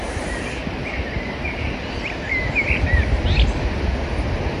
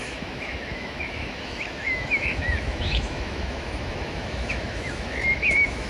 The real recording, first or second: first